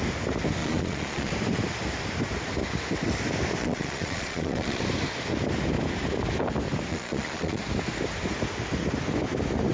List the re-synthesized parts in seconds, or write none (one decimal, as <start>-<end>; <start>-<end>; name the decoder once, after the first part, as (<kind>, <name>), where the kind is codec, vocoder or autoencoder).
0.6-1.3 (vocoder, Vocos); 3.6-4.8; 6.9-7.6